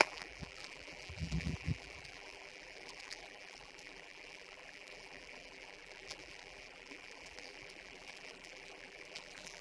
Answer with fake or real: fake